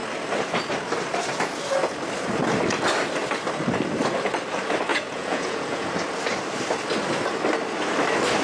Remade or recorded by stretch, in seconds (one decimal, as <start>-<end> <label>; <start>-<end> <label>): 0.0-4.9 recorded; 4.9-5.9 remade; 5.9-8.4 recorded